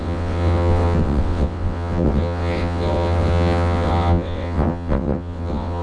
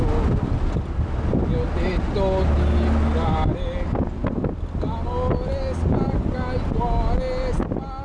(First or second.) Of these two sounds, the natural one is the second